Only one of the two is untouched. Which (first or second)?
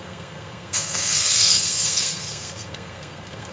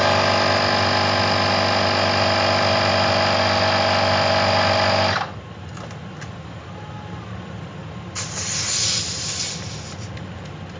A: second